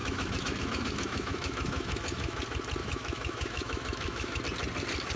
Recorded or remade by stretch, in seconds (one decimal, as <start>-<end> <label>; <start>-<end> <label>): 0.0-2.4 remade; 2.4-2.8 recorded; 2.8-4.4 remade; 4.4-5.2 recorded